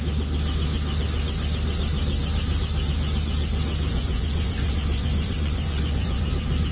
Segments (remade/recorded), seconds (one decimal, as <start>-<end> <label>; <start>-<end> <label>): 0.0-3.9 recorded; 3.9-6.2 remade; 6.2-6.7 recorded